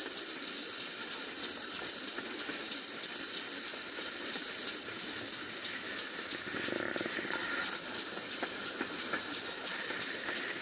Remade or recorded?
recorded